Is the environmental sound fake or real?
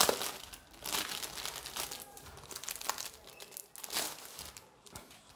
real